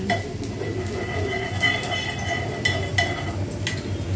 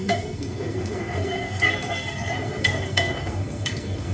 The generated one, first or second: second